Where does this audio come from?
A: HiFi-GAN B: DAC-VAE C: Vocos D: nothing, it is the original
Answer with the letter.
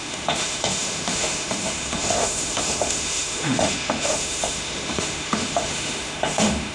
B